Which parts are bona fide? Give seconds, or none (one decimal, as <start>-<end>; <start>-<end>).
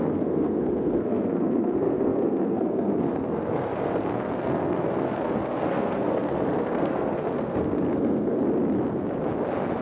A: 8.4-9.8